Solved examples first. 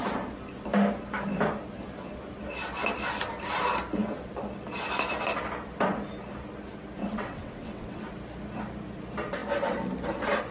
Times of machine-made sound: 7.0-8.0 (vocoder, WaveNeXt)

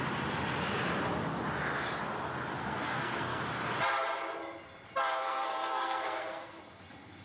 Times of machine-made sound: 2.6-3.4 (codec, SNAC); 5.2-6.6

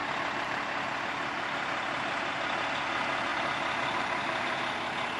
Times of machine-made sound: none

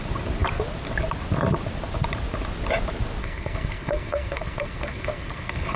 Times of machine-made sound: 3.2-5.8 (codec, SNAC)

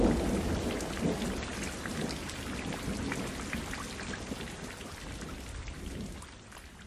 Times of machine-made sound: none

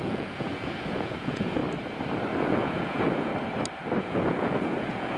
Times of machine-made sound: 0.0-1.6 (vocoder, Vocos); 2.4-3.3; 4.0-5.2

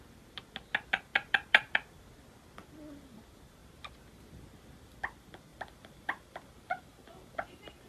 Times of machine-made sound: 3.6-4.2 (vocoder, BigVGAN v2); 5.5-7.9